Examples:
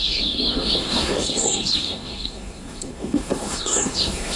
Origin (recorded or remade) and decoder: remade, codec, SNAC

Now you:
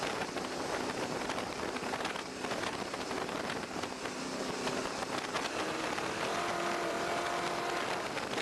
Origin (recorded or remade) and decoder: recorded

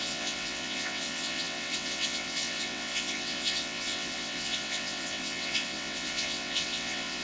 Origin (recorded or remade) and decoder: remade, vocoder, WaveNeXt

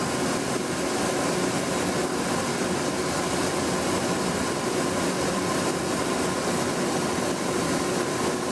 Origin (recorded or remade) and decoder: recorded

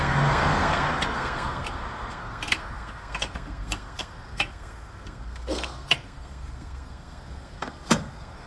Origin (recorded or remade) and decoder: remade, codec, SNAC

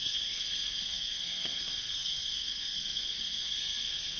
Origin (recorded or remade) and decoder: remade, codec, SNAC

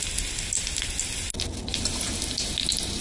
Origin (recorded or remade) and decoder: recorded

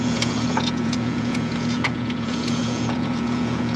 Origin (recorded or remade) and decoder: remade, vocoder, Vocos